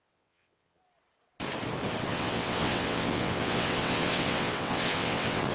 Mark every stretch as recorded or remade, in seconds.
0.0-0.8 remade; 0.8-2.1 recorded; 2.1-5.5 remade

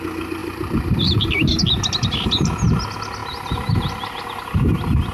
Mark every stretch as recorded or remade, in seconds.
0.0-0.4 recorded; 0.4-1.5 remade; 1.5-5.1 recorded

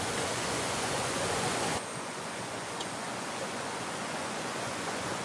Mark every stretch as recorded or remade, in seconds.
0.0-5.2 remade

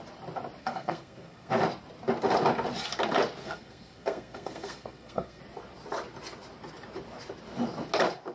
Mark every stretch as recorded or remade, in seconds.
0.0-0.6 recorded; 0.6-1.5 remade; 1.5-3.4 recorded; 3.4-5.4 remade; 5.4-8.3 recorded

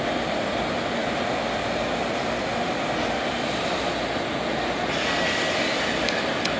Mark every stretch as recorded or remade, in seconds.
0.0-6.6 recorded